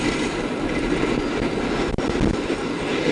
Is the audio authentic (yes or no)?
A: yes